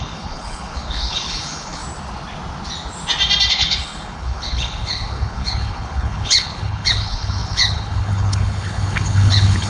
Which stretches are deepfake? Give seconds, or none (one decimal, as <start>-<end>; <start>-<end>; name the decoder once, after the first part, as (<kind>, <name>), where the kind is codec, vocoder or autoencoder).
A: 0.0-1.8 (codec, HILCodec); 3.5-9.7